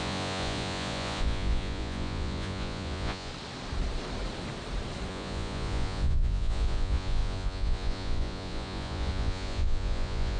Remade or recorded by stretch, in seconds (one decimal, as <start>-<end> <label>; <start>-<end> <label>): 0.0-3.3 remade; 3.3-5.1 recorded; 5.1-10.4 remade